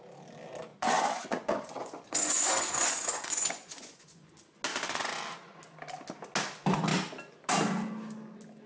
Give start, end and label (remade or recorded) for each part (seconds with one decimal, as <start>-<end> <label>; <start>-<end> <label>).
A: 0.0-0.7 recorded; 0.7-4.3 remade; 4.3-4.7 recorded; 4.7-5.2 remade; 5.2-8.7 recorded